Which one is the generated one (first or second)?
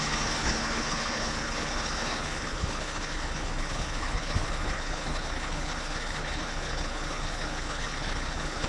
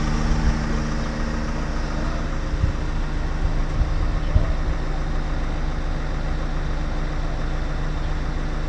first